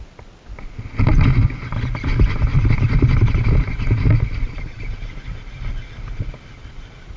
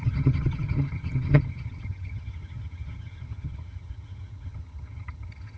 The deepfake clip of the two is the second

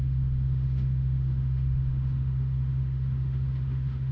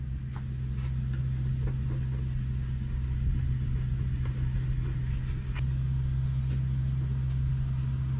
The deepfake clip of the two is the first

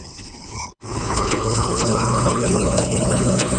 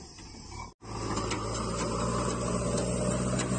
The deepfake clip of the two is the first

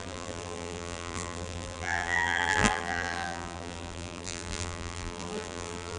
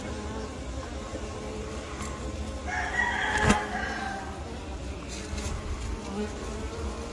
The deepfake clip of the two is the first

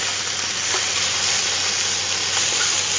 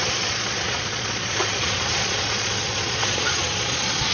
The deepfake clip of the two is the second